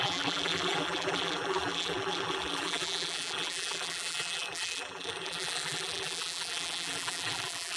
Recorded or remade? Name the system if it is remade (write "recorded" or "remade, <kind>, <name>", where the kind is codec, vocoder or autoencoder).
remade, vocoder, BigVGAN v2